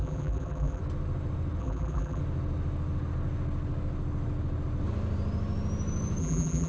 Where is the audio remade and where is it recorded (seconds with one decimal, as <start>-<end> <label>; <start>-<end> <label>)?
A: 0.0-0.8 remade; 0.8-1.6 recorded; 1.6-2.2 remade; 2.2-6.2 recorded; 6.2-6.7 remade

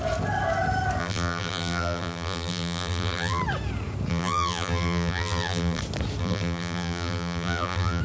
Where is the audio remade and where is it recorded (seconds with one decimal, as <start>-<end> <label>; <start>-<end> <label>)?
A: 0.0-1.0 recorded; 1.0-3.4 remade; 3.4-4.1 recorded; 4.1-5.8 remade; 5.8-6.2 recorded; 6.2-8.0 remade

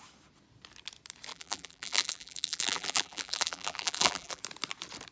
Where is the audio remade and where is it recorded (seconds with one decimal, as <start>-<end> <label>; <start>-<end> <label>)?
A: 0.0-1.3 recorded; 1.3-4.4 remade; 4.4-5.1 recorded

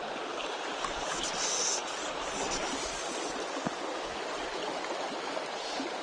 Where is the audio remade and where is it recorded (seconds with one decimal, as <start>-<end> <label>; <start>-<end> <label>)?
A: 0.0-1.2 remade; 1.2-6.0 recorded